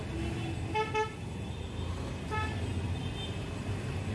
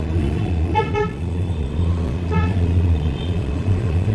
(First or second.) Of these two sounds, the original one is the first